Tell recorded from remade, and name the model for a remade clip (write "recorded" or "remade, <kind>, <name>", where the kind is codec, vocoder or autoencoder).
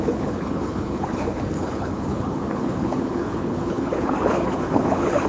remade, codec, HILCodec